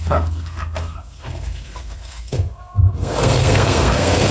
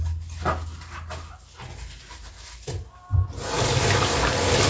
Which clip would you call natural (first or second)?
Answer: second